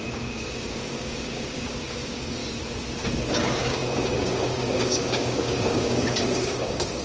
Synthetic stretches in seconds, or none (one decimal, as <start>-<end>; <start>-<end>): 0.0-2.4; 3.3-7.0